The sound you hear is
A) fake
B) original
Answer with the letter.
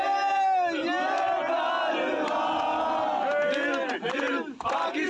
B